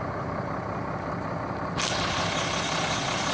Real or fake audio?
real